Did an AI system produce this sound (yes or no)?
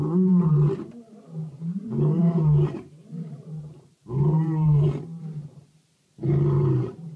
yes